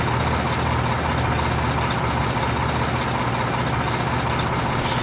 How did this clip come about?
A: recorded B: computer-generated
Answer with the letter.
A